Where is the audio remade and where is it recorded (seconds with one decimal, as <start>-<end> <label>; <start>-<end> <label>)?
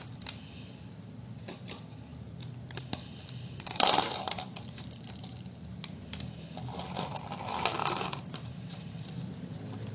0.0-2.1 recorded; 2.1-5.1 remade; 5.1-7.8 recorded; 7.8-9.0 remade; 9.0-9.9 recorded